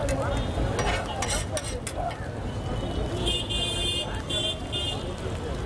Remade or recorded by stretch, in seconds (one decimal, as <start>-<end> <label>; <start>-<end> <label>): 0.0-5.7 recorded